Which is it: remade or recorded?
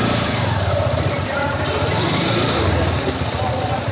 remade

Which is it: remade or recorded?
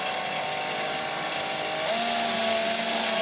recorded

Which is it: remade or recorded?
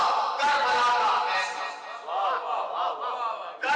recorded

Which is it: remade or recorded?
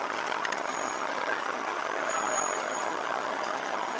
remade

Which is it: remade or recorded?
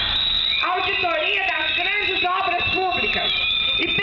recorded